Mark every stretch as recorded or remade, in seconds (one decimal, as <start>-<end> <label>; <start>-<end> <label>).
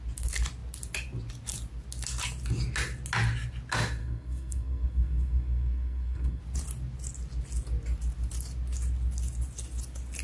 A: 0.0-4.0 recorded; 4.0-6.4 remade; 6.4-10.2 recorded